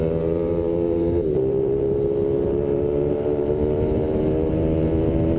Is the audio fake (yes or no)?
yes